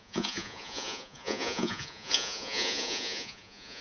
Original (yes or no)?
no